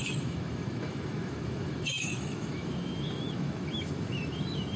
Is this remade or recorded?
remade